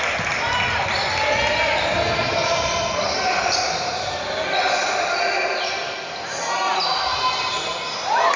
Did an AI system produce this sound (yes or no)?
no